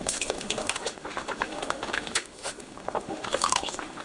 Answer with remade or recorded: remade